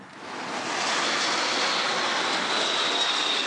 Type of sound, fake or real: real